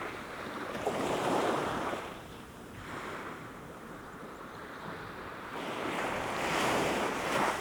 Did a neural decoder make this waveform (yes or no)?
yes